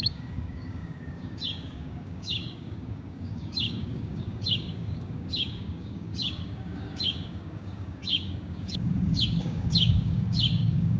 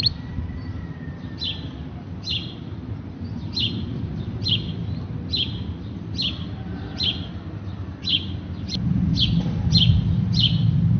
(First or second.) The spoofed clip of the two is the first